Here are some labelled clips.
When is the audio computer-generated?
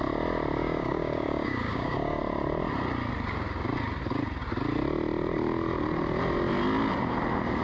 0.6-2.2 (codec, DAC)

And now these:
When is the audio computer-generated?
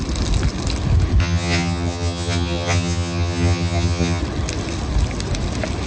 1.2-4.2 (vocoder, HiFi-GAN)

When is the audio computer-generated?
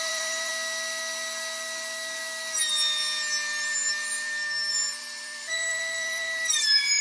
0.0-0.5 (vocoder, BigVGAN v2); 4.7-7.0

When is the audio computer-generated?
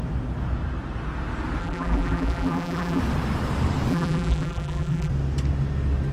1.6-3.0 (vocoder, BigVGAN v2); 3.9-5.1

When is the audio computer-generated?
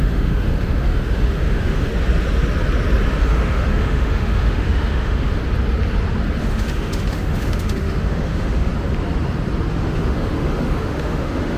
0.0-1.9 (autoencoder, DAC-VAE); 3.2-5.4; 6.4-8.7; 9.7-11.6